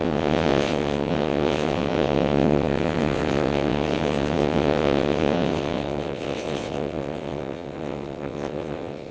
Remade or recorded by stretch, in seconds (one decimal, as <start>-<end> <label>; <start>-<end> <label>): 0.0-9.1 remade